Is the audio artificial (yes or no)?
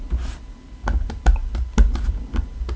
no